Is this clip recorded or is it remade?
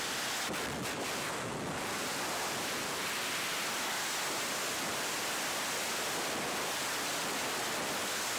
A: recorded